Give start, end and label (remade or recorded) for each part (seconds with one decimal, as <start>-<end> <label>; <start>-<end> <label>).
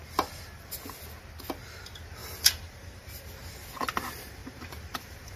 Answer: 0.0-2.2 recorded; 2.2-3.1 remade; 3.1-4.4 recorded; 4.4-5.4 remade